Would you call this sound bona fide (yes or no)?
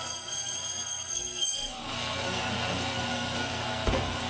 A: no